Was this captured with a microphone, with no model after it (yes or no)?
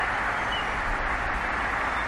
yes